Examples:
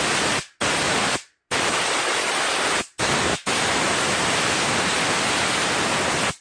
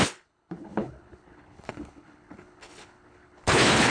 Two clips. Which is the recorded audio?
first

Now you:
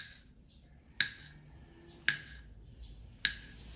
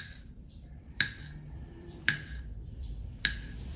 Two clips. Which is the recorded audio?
first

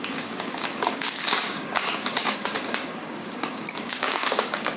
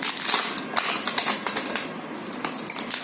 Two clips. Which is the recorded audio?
second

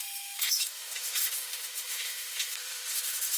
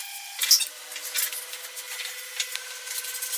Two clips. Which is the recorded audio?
second